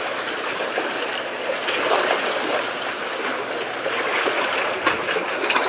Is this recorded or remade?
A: recorded